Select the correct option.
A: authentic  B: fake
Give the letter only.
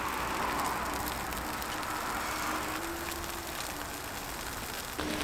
A